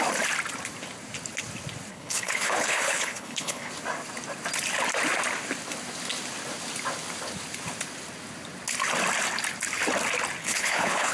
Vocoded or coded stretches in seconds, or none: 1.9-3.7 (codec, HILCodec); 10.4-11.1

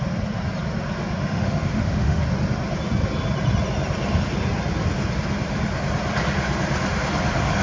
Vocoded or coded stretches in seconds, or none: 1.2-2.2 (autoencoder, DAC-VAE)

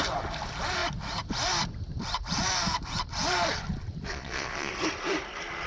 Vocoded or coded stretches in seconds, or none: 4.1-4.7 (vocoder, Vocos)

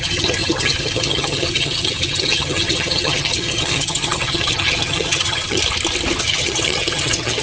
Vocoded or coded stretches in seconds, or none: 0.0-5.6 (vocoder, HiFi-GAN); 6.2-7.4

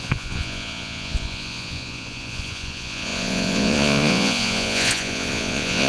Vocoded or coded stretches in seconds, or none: 0.0-5.9 (vocoder, Vocos)

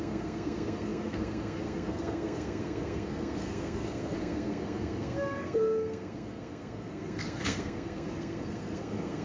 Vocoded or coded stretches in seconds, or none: 0.0-9.2 (codec, SNAC)